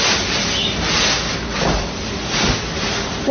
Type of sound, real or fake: real